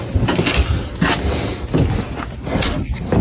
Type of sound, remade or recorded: recorded